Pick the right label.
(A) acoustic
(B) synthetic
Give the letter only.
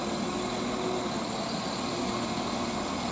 A